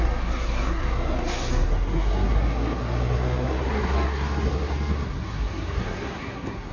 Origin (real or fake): fake